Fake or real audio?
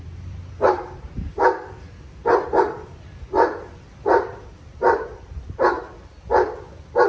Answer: fake